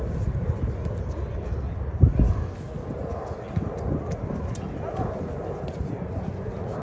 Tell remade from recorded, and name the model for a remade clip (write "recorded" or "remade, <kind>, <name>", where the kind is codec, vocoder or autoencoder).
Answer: recorded